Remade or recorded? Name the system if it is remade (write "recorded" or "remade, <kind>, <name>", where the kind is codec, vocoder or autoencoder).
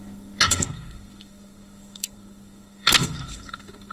remade, codec, SNAC